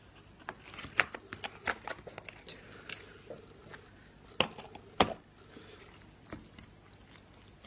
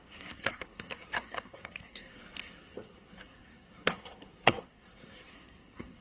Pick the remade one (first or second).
second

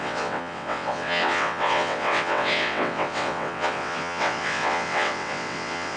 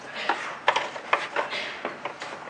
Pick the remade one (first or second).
first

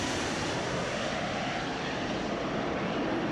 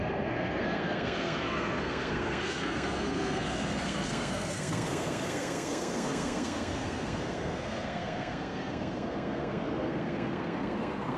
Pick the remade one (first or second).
second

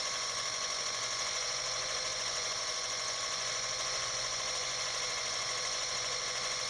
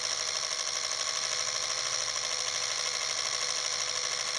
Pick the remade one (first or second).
first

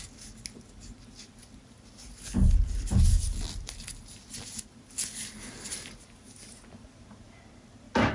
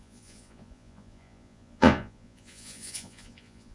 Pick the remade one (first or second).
second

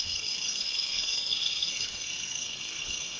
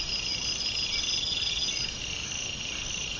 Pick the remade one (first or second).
first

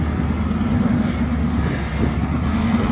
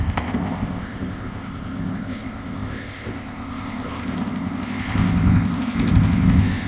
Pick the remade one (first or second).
second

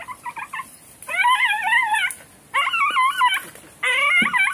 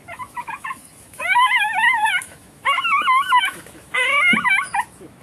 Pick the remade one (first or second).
second